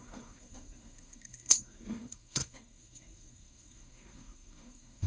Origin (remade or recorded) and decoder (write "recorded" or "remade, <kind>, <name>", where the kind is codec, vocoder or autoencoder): remade, codec, SNAC